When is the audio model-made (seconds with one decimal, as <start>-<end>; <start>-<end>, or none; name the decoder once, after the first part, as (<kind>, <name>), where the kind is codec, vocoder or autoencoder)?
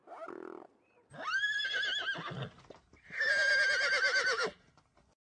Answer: none